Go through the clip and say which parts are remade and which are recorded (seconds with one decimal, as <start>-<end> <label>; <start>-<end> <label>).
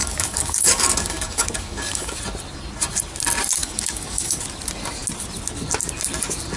0.0-2.2 remade; 2.2-3.6 recorded; 3.6-4.4 remade; 4.4-6.6 recorded